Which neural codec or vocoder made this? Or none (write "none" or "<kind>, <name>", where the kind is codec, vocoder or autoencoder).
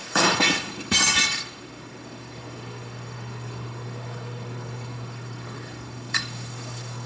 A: codec, DAC